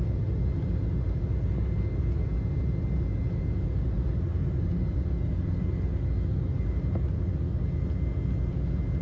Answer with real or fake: real